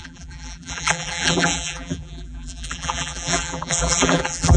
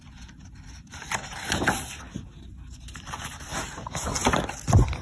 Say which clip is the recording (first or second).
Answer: second